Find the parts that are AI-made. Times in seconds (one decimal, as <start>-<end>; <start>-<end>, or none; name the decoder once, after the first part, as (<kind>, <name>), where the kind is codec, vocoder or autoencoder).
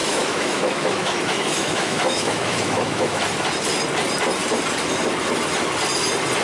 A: 0.0-3.2 (autoencoder, DAC-VAE)